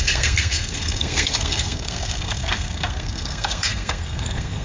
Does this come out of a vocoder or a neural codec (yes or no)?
yes